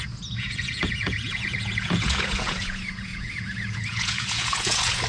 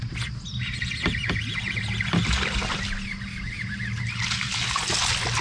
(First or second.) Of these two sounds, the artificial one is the first